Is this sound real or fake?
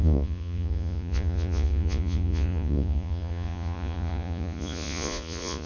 fake